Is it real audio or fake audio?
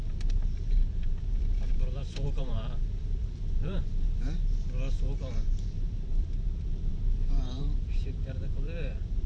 fake